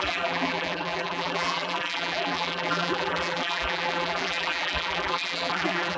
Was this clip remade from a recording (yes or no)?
yes